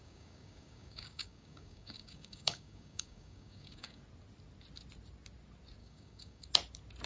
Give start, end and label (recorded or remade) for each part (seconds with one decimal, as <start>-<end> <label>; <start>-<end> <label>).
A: 0.0-4.0 remade; 4.0-5.8 recorded; 5.8-6.5 remade; 6.5-7.1 recorded